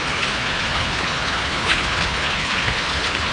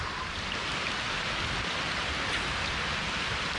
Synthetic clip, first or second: first